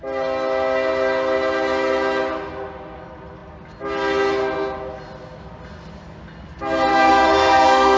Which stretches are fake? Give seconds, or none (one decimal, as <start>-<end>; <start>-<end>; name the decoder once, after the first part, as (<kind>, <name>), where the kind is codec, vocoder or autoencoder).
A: 6.9-8.0 (codec, SNAC)